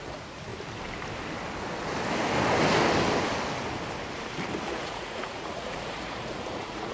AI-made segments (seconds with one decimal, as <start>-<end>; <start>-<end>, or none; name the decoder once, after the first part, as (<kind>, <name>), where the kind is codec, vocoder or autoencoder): 0.0-0.5 (vocoder, Vocos); 4.6-6.9

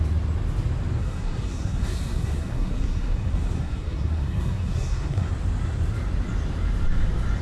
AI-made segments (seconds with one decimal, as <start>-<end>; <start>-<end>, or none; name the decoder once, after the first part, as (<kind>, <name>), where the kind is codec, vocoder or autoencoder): 1.0-5.3 (codec, SNAC)

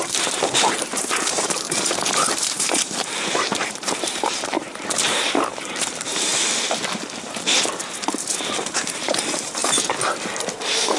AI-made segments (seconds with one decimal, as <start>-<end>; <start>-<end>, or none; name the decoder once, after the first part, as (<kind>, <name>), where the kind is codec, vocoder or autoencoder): 0.0-6.3 (vocoder, BigVGAN v2); 7.9-11.0

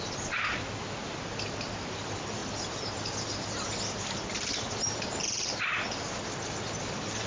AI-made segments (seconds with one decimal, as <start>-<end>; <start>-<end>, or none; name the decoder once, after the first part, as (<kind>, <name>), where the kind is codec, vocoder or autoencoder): 0.0-2.4 (vocoder, BigVGAN v2); 6.8-7.3

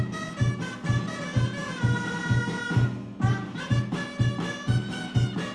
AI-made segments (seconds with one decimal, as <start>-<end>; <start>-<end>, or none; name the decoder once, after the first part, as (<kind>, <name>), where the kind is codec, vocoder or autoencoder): none

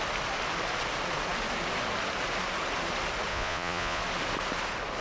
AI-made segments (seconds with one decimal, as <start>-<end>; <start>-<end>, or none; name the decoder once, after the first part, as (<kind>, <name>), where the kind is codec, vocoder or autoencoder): 3.3-4.0 (vocoder, Vocos)